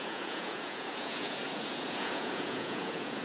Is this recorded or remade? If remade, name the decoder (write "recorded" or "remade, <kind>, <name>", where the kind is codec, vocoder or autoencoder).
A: remade, vocoder, Vocos